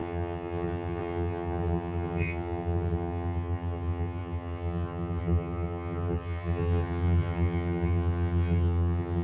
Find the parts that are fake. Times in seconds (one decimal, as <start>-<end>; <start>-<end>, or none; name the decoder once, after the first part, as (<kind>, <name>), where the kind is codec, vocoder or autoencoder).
0.0-9.2 (vocoder, HiFi-GAN)